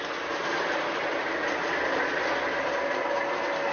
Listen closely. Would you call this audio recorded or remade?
recorded